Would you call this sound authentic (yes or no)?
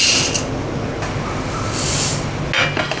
yes